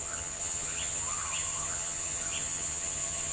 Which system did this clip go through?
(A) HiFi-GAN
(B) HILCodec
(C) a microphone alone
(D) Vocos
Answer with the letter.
A